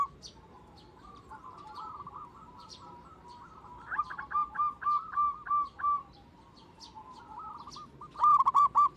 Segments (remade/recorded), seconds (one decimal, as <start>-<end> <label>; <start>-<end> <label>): 0.0-0.9 recorded; 0.9-4.0 remade; 4.0-9.0 recorded